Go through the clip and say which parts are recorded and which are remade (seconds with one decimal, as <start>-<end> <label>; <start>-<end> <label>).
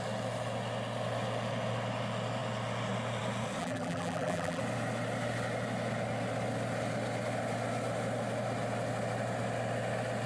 0.0-3.6 recorded; 3.6-4.6 remade; 4.6-10.3 recorded